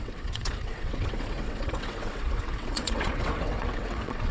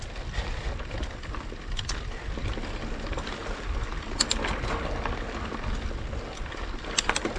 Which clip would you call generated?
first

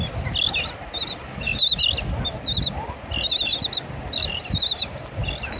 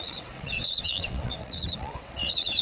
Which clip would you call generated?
second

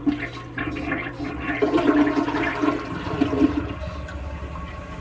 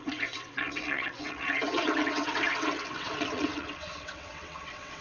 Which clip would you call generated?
second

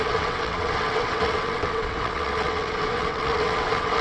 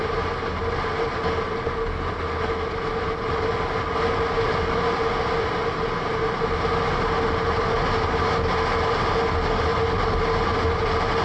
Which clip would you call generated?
first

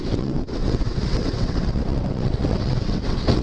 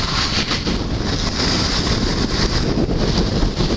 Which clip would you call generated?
first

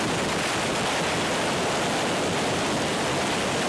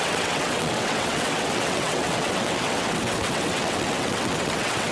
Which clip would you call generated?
second